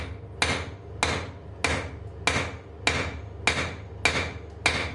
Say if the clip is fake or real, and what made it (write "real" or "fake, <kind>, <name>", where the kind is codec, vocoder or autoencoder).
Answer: real